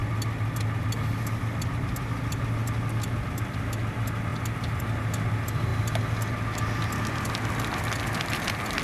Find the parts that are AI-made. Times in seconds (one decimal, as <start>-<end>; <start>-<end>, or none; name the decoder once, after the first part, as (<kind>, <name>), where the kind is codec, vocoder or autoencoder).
none